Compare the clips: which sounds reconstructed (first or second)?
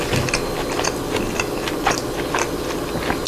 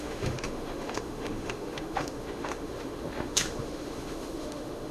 second